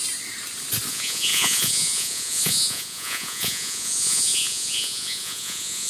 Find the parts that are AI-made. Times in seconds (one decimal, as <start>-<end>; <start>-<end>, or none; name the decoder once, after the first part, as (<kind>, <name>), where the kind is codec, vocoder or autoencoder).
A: 0.9-5.9 (vocoder, Vocos)

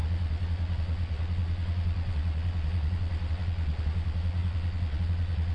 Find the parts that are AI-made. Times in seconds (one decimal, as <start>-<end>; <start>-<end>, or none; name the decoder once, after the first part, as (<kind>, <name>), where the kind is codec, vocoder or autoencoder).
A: 0.0-5.5 (vocoder, Vocos)

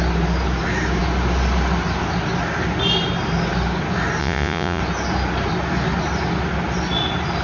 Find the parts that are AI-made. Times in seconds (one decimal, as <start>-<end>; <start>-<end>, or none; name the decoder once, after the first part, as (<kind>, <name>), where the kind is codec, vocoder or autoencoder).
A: 4.2-4.8 (vocoder, Vocos)

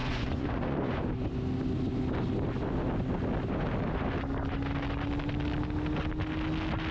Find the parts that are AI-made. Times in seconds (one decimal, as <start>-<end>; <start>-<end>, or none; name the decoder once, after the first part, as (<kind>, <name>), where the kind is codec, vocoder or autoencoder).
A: 0.0-1.0 (vocoder, Vocos)

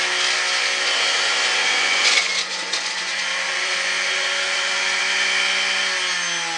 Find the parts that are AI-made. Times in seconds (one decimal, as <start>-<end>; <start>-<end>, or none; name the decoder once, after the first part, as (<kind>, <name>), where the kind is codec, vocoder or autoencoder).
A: 1.6-5.0 (vocoder, Vocos)

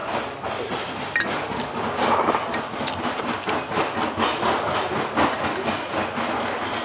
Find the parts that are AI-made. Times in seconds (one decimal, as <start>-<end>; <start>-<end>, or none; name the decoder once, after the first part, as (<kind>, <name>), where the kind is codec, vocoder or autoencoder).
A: none

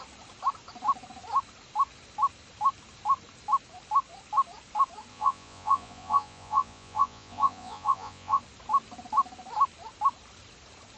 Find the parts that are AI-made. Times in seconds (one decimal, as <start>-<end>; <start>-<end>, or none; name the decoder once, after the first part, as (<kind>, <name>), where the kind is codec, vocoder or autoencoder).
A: 5.1-8.4 (vocoder, Vocos)

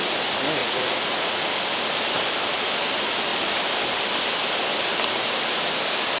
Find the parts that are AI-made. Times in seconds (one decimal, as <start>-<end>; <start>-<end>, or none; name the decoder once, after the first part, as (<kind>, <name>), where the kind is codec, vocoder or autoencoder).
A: 0.6-1.4 (vocoder, Vocos)